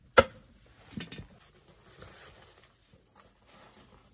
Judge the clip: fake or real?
real